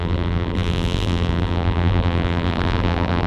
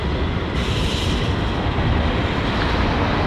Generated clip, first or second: first